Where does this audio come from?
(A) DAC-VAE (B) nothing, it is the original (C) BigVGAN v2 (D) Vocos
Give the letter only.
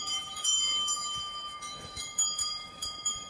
A